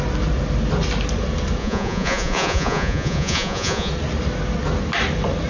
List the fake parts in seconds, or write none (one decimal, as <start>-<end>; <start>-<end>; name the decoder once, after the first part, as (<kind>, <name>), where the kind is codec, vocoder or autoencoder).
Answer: 1.6-3.9 (vocoder, Vocos)